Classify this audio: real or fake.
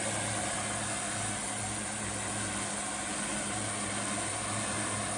real